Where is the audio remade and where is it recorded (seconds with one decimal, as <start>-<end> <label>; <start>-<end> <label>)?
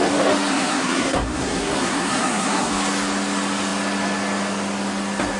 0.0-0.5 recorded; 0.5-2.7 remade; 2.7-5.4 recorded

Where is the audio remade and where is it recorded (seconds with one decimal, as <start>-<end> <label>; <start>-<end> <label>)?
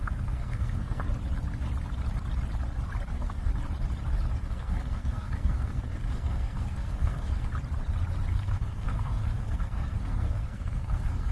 0.0-1.0 remade; 1.0-3.1 recorded; 3.1-3.5 remade; 3.5-4.3 recorded; 4.3-7.5 remade; 7.5-8.3 recorded; 8.3-11.3 remade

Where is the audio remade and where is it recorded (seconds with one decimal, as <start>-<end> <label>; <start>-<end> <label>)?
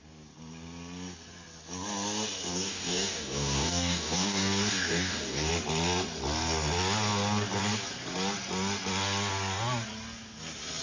0.0-2.5 recorded; 2.5-5.5 remade; 5.5-10.8 recorded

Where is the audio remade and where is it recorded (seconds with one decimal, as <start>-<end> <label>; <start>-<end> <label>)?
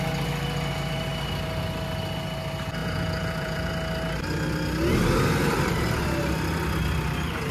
0.0-2.8 recorded; 2.8-3.7 remade; 3.7-7.5 recorded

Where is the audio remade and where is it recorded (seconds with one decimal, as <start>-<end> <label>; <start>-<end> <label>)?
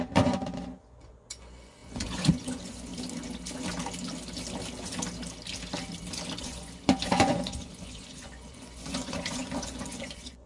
0.0-2.9 remade; 2.9-6.4 recorded; 6.4-10.5 remade